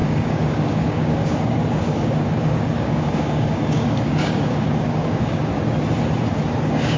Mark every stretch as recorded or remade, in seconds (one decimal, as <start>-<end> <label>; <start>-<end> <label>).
0.0-5.5 remade; 5.5-6.6 recorded; 6.6-7.0 remade